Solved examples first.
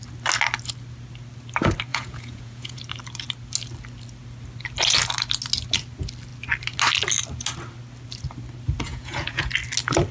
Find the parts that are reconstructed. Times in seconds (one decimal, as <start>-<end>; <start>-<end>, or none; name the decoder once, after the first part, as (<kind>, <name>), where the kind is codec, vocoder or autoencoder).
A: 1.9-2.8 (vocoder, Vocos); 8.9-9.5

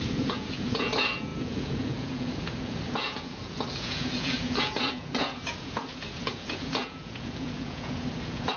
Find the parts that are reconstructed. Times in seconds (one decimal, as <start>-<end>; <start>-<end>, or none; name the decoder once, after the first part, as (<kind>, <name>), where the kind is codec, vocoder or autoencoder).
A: 0.0-8.6 (vocoder, Vocos)

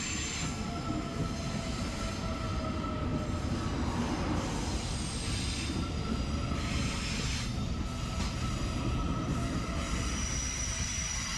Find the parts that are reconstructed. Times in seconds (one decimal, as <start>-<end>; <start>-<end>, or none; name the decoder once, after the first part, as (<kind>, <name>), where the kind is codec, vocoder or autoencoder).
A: none

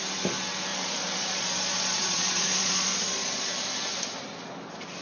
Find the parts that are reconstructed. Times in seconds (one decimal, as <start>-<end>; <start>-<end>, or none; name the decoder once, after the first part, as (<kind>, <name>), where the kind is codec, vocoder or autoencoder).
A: 0.7-3.6 (vocoder, Vocos)

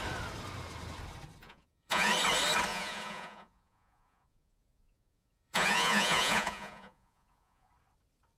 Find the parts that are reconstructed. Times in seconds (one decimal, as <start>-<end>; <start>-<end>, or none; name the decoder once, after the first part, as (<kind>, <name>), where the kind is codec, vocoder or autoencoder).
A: 1.4-2.1 (vocoder, Vocos); 2.7-7.7

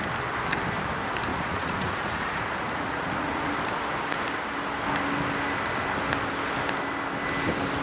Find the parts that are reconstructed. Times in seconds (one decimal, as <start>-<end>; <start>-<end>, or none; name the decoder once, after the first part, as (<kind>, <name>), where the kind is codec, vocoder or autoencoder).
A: 1.3-3.5 (vocoder, Vocos)